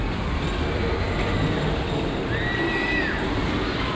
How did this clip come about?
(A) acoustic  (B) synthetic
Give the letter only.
A